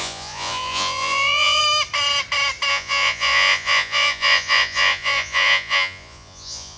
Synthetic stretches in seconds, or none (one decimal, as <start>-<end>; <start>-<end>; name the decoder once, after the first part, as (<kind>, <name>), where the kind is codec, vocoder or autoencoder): 0.0-1.6 (vocoder, Vocos); 2.7-6.8